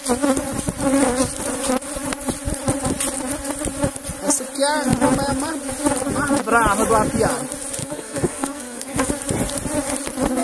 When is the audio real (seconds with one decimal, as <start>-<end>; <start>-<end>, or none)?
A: 0.0-7.8; 9.1-10.4